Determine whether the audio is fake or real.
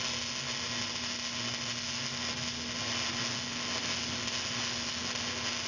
real